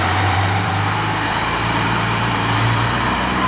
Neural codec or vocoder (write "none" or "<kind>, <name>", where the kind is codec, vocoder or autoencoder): vocoder, BigVGAN v2